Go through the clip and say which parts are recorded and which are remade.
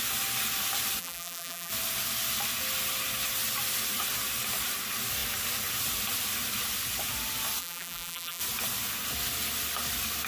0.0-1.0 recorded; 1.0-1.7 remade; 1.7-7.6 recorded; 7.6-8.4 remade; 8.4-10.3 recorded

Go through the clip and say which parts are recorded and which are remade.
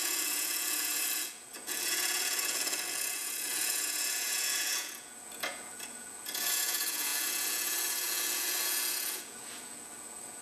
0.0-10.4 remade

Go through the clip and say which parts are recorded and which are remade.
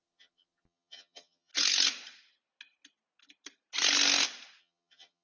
0.0-1.5 remade; 1.5-4.6 recorded; 4.6-5.2 remade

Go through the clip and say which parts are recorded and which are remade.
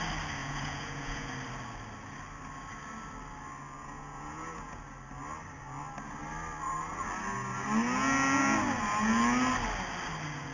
0.0-0.4 recorded; 0.4-1.3 remade; 1.3-3.8 recorded; 3.8-4.8 remade; 4.8-10.5 recorded